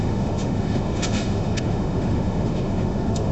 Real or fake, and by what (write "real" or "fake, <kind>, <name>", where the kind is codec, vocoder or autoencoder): fake, autoencoder, DAC-VAE